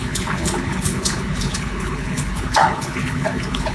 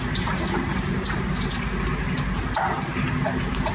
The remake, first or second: first